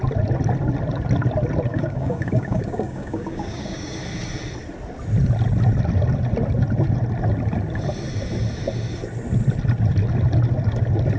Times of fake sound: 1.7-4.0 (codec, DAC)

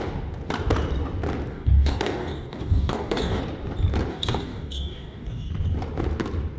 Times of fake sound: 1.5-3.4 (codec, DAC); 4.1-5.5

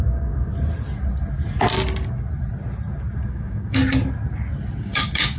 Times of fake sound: 0.0-0.5 (codec, DAC); 3.3-3.8; 4.8-5.4